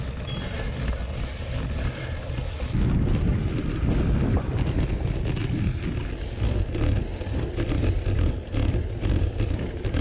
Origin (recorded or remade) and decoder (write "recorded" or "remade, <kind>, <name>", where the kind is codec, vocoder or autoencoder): recorded